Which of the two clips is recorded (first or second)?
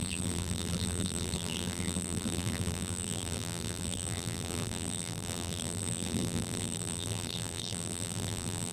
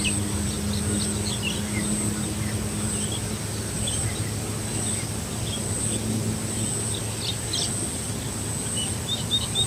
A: second